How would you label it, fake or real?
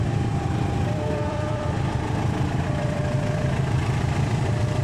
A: fake